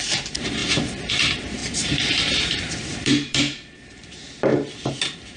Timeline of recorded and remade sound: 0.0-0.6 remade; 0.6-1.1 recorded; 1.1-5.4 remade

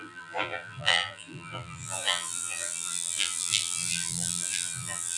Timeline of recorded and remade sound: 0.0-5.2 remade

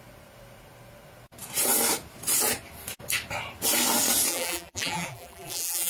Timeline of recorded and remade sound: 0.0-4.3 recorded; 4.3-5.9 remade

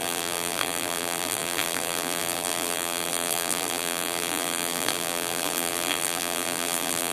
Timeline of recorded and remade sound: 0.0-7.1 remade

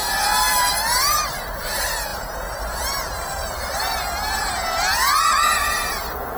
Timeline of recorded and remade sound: 0.0-2.1 recorded; 2.1-5.5 remade; 5.5-6.4 recorded

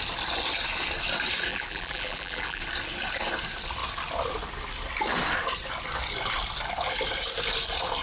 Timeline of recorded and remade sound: 0.0-1.5 recorded; 1.5-2.6 remade; 2.6-8.0 recorded

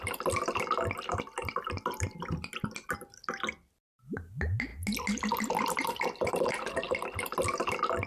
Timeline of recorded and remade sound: 0.0-8.1 recorded

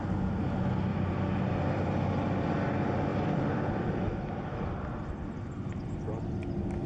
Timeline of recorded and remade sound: 0.0-0.9 recorded; 0.9-1.5 remade; 1.5-3.1 recorded; 3.1-6.2 remade; 6.2-6.9 recorded